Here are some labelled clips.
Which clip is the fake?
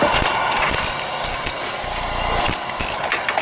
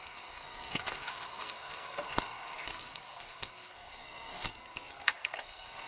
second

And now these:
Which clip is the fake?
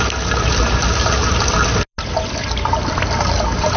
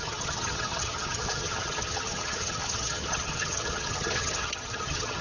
second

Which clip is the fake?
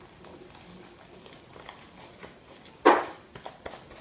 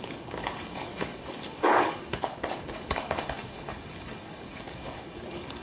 second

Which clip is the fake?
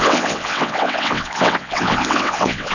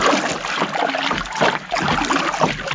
first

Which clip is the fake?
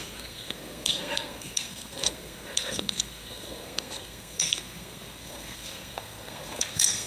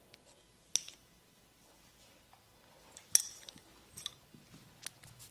first